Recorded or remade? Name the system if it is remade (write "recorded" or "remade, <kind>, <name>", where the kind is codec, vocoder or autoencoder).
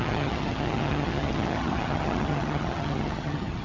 remade, vocoder, HiFi-GAN